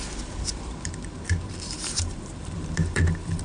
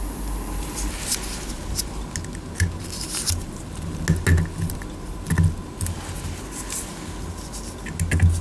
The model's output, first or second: first